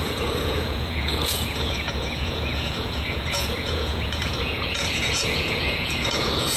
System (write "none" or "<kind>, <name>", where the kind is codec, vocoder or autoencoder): vocoder, Vocos